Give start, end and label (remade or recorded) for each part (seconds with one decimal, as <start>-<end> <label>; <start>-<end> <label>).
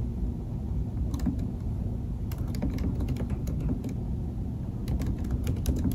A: 0.0-5.9 recorded